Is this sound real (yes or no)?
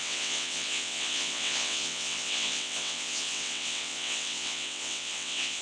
no